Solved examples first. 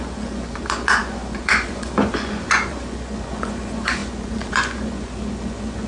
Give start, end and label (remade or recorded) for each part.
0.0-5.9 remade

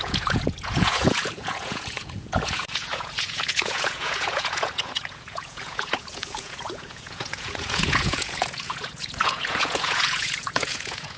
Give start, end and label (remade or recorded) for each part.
0.0-11.2 remade

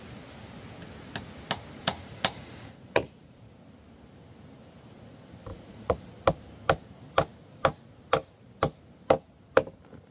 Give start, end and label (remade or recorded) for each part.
0.0-1.8 recorded; 1.8-3.4 remade; 3.4-5.5 recorded; 5.5-6.1 remade; 6.1-10.1 recorded

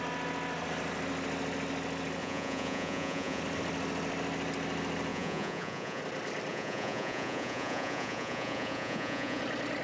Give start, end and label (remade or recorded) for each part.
0.0-2.2 recorded; 2.2-3.4 remade; 3.4-5.1 recorded; 5.1-6.0 remade; 6.0-6.5 recorded; 6.5-9.4 remade; 9.4-9.8 recorded

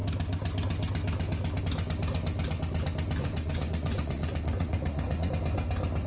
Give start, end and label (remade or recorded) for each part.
0.0-3.2 recorded; 3.2-5.3 remade; 5.3-6.1 recorded

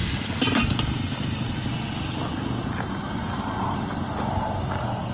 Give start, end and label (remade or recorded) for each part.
0.0-5.1 recorded

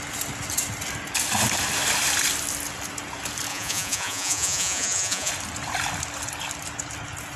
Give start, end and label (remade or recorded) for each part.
0.0-3.5 recorded; 3.5-5.3 remade; 5.3-7.4 recorded